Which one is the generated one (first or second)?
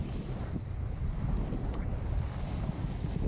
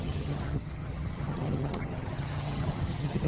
second